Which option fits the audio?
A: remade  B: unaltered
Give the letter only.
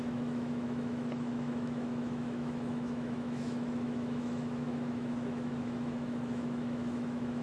A